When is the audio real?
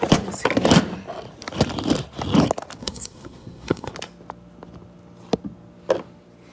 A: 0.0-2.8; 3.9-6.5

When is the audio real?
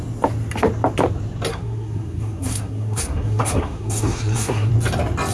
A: 0.0-1.5; 4.7-5.3